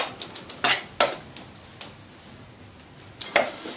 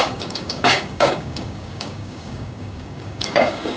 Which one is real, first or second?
first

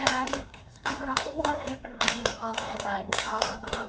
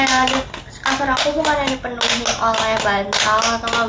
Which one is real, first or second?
second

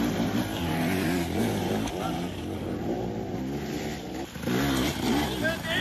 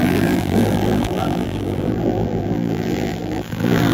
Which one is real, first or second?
first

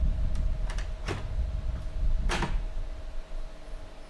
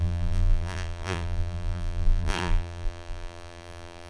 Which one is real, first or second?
first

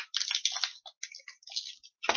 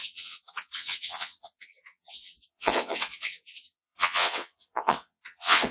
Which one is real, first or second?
first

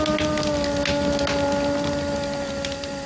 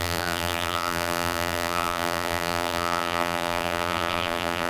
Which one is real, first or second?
first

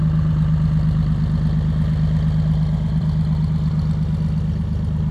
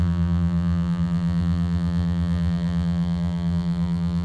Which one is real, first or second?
first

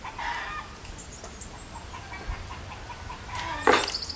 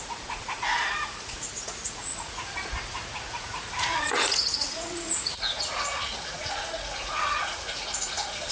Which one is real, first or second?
first